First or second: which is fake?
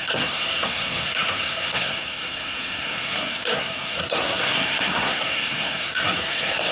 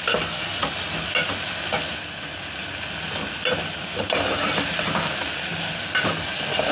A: first